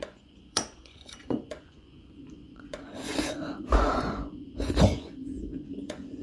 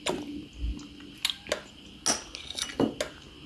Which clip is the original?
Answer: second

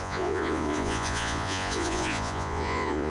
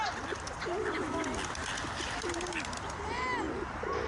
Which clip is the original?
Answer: second